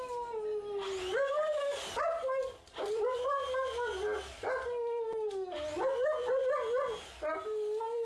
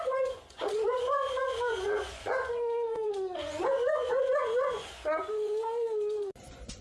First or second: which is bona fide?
first